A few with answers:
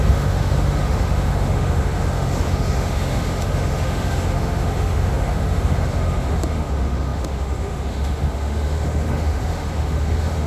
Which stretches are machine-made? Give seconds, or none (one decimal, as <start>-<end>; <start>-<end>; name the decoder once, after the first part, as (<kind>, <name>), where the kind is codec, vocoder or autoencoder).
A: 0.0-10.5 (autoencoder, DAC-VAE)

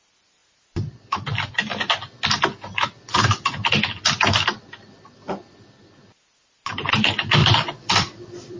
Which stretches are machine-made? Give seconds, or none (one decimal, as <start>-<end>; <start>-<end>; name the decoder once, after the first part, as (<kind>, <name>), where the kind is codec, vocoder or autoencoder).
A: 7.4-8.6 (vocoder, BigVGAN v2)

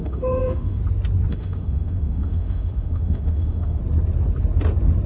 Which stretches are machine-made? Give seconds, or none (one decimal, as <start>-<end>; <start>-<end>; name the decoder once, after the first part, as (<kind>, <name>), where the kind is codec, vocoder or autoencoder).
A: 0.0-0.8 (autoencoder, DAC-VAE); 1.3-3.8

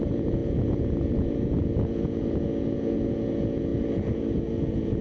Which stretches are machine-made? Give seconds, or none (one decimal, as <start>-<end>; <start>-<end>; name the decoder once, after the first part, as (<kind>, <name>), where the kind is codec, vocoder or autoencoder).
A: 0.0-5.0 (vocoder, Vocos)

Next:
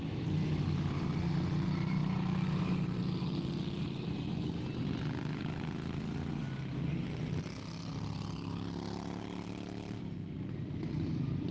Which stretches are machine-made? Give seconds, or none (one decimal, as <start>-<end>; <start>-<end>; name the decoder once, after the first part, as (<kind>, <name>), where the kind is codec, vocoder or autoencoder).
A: none

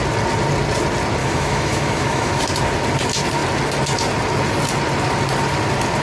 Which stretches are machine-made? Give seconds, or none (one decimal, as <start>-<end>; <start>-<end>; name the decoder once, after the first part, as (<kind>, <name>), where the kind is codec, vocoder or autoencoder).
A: 1.2-2.4 (autoencoder, DAC-VAE)